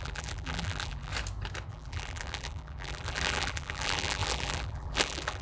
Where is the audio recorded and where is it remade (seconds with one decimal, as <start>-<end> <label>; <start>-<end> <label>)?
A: 0.0-1.1 remade; 1.1-1.7 recorded; 1.7-5.4 remade